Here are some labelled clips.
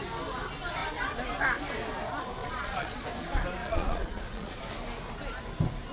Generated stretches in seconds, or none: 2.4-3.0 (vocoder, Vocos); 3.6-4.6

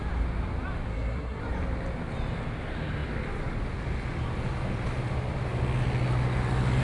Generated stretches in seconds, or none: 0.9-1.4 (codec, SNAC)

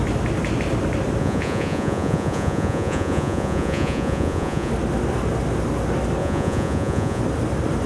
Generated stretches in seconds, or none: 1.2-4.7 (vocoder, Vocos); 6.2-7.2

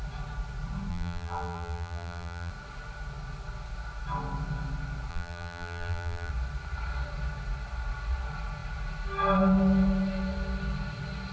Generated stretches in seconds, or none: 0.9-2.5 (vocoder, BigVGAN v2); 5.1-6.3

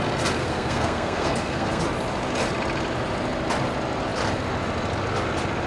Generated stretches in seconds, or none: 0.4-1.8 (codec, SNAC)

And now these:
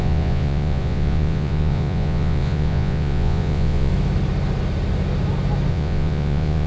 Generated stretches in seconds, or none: 0.0-3.9 (vocoder, Vocos); 5.7-6.7

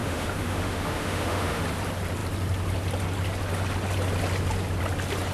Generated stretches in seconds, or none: 0.0-1.6 (autoencoder, DAC-VAE)